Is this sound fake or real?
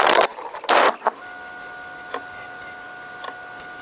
real